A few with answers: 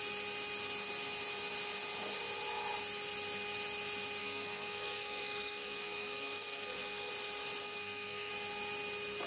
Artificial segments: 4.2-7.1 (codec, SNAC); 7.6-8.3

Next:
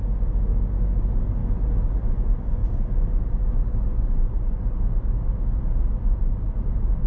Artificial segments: none

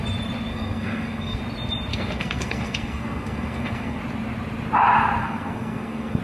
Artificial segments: 0.5-1.4 (codec, SNAC); 1.9-4.0; 5.2-6.2

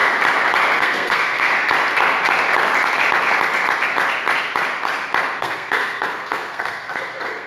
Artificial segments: 0.8-1.5 (codec, SNAC); 5.4-7.5

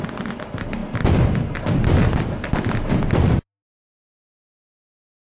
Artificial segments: none